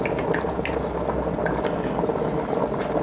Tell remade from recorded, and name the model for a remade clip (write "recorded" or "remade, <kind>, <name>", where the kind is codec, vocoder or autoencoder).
recorded